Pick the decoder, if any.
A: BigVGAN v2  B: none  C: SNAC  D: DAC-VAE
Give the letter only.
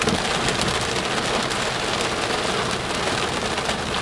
B